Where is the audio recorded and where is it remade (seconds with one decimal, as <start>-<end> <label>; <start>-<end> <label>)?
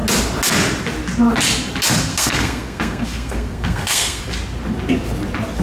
0.0-2.1 recorded; 2.1-4.2 remade; 4.2-5.6 recorded